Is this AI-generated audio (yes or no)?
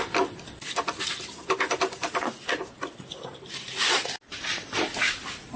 no